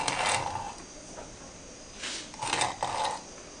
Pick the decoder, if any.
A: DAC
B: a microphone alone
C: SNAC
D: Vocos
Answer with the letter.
B